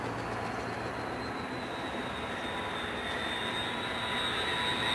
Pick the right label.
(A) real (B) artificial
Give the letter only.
A